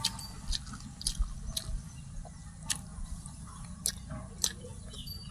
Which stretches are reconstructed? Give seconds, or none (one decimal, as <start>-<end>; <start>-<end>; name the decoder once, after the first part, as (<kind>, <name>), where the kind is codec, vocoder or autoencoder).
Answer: none